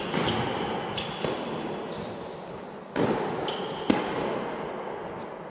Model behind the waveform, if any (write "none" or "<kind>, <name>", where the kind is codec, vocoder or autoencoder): none